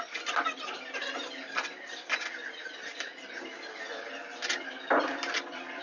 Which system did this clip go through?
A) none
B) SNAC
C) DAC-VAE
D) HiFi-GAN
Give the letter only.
A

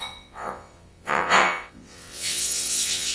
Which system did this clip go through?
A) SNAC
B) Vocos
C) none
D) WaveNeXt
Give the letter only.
D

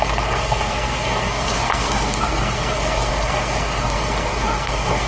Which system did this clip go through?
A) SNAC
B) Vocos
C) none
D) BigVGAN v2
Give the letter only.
A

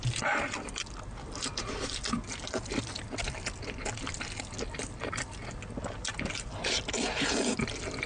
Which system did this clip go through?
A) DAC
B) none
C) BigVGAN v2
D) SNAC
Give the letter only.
B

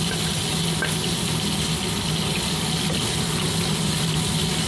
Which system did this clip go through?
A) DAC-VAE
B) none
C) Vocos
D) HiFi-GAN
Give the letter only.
B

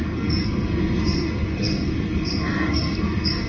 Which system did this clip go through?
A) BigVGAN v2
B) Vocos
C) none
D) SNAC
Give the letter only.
D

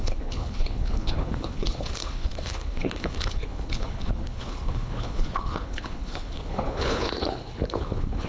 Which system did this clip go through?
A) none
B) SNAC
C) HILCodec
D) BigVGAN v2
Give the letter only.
C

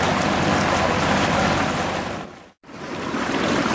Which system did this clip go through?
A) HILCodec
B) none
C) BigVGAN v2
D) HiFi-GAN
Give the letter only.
B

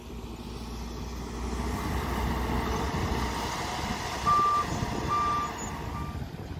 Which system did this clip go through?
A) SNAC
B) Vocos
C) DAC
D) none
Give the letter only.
D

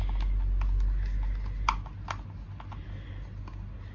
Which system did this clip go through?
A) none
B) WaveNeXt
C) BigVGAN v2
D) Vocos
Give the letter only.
A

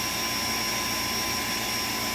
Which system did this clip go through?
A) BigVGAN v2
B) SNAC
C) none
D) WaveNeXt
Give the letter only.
C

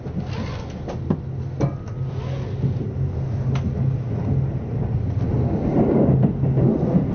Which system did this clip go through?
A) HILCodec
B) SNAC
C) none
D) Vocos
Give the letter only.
C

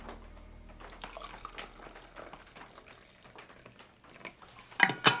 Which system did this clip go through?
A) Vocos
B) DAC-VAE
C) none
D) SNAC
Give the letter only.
C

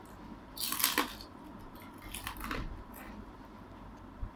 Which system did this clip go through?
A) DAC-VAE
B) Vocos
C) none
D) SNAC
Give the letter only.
C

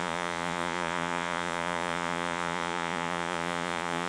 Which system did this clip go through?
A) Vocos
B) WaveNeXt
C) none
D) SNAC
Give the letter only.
A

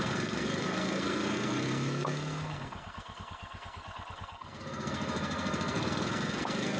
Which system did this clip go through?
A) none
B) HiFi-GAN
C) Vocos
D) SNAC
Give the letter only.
D